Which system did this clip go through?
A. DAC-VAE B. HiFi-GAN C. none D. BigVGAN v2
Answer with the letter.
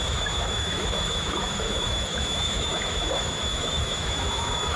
A